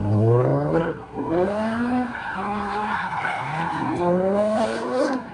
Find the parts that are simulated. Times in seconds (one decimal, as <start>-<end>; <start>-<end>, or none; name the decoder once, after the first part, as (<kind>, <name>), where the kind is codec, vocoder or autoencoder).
0.0-5.3 (codec, SNAC)